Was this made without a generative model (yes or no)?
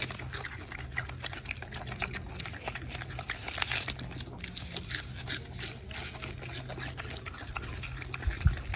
yes